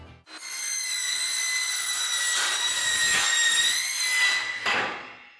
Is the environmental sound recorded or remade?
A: recorded